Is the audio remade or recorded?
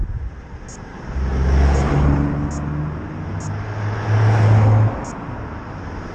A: recorded